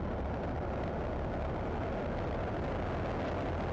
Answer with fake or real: real